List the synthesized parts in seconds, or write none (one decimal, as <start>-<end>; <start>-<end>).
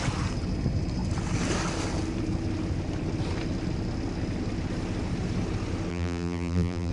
5.9-6.9